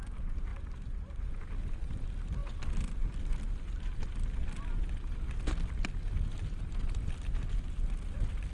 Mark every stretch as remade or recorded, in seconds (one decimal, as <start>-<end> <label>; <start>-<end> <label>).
0.0-8.5 recorded